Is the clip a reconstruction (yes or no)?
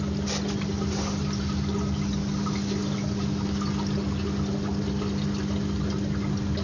no